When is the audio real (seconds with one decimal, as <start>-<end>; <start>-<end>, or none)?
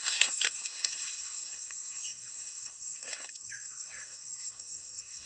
none